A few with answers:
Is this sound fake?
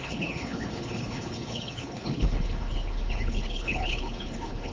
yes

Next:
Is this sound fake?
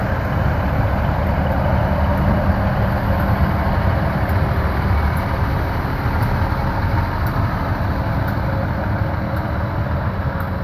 no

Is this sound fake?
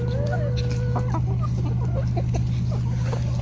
no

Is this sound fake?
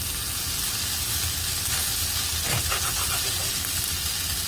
no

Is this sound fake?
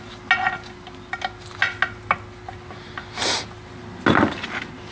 no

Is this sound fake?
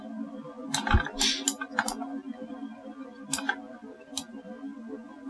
no